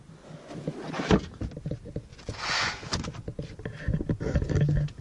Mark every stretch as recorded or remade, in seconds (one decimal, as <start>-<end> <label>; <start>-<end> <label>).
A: 0.0-2.1 recorded; 2.1-2.7 remade; 2.7-5.0 recorded